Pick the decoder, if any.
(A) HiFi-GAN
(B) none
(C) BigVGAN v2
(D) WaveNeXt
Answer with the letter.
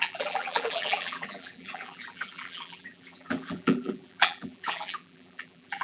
C